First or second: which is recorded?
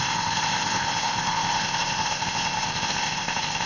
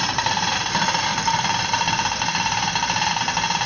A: second